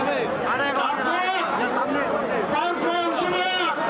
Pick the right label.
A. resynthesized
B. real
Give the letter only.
B